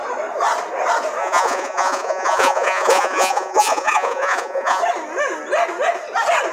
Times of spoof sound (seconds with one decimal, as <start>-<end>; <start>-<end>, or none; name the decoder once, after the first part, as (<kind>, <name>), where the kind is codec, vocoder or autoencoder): 1.2-4.8 (vocoder, Vocos)